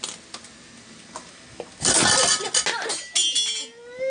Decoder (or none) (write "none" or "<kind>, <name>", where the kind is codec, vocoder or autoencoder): none